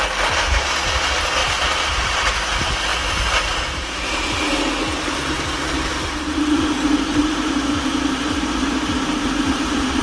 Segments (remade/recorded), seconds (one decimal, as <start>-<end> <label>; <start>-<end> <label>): 0.0-1.4 recorded; 1.4-2.3 remade; 2.3-2.9 recorded; 2.9-4.8 remade; 4.8-5.9 recorded; 5.9-10.0 remade